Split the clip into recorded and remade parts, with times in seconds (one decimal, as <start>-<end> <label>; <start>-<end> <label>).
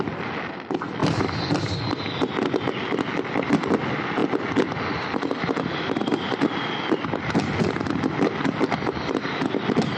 0.0-10.0 recorded